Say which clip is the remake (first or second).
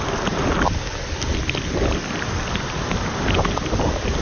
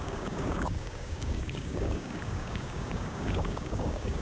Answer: second